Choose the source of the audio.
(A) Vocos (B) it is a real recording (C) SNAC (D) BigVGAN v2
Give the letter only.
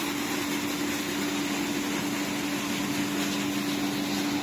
B